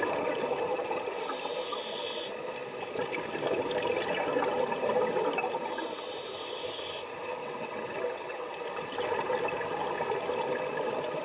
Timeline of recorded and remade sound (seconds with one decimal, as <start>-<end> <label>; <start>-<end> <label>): 0.0-7.4 recorded; 7.4-8.5 remade; 8.5-11.2 recorded